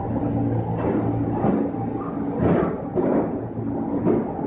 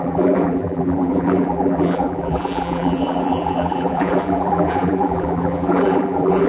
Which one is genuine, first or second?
first